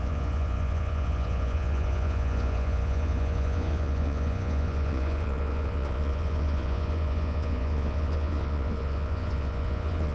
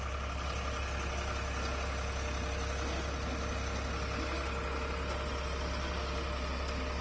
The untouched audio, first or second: second